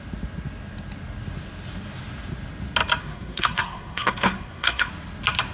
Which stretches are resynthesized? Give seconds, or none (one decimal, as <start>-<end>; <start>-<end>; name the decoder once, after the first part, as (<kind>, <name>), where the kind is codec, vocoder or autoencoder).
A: 3.0-4.9 (codec, SNAC)